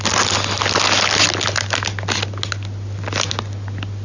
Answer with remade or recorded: recorded